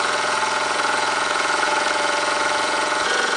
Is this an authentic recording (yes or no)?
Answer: no